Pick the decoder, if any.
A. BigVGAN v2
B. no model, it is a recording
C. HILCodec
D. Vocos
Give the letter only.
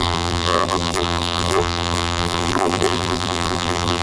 A